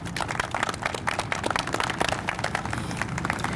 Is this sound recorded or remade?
recorded